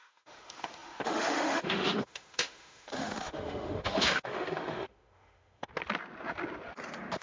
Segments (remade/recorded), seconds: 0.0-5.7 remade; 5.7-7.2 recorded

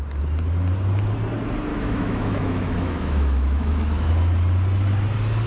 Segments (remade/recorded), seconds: 0.0-1.7 recorded; 1.7-4.1 remade; 4.1-5.5 recorded

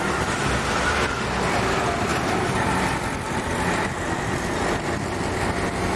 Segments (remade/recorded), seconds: 0.0-6.0 recorded

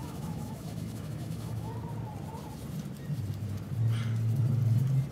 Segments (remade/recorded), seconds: 0.0-1.7 remade; 1.7-5.1 recorded

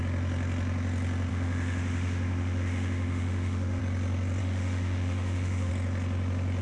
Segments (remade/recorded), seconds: 0.0-1.3 recorded; 1.3-3.8 remade; 3.8-4.4 recorded; 4.4-5.7 remade; 5.7-6.6 recorded

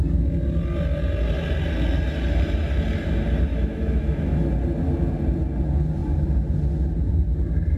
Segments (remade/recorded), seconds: 0.0-3.5 recorded; 3.5-4.5 remade; 4.5-7.8 recorded

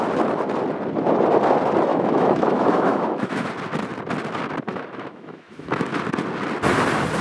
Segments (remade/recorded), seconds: 0.0-1.9 recorded; 1.9-3.5 remade; 3.5-4.7 recorded; 4.7-6.0 remade; 6.0-7.2 recorded